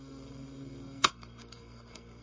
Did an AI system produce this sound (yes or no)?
yes